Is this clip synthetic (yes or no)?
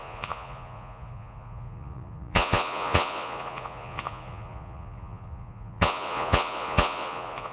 yes